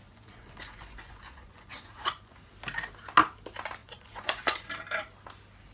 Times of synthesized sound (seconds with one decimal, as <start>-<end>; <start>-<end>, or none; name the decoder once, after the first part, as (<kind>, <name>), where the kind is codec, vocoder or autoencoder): 0.0-2.5 (vocoder, Vocos); 3.8-4.7